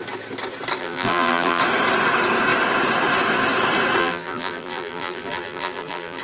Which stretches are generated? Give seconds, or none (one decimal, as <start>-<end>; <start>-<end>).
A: 0.8-1.6; 4.0-6.2